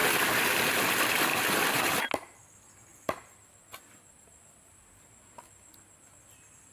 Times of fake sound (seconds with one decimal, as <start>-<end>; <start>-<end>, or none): none